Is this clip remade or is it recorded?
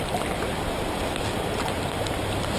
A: remade